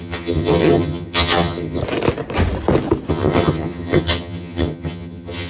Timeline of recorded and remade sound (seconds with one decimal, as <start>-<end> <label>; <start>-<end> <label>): 0.0-1.8 remade; 1.8-3.1 recorded; 3.1-5.5 remade